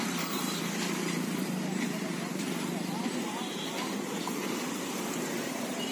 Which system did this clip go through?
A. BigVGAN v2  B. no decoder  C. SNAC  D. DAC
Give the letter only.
A